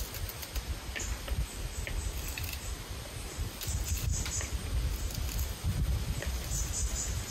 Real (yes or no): yes